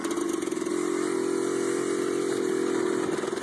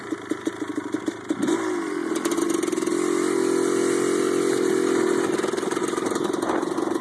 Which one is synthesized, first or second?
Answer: second